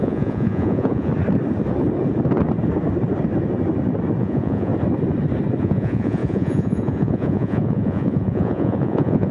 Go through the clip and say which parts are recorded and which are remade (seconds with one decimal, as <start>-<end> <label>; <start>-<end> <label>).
0.0-1.1 remade; 1.1-4.2 recorded; 4.2-4.7 remade; 4.7-5.6 recorded; 5.6-9.3 remade